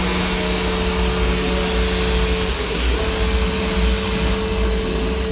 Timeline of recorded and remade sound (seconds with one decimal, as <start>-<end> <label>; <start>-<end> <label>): 0.0-2.5 recorded; 2.5-3.0 remade; 3.0-5.3 recorded